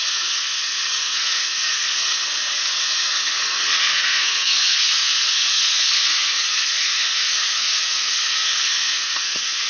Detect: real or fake fake